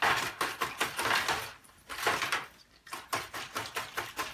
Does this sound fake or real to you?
real